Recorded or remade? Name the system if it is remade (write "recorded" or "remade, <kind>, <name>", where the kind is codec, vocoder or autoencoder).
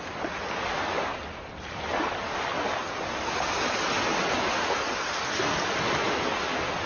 recorded